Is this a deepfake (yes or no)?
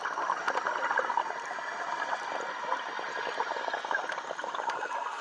no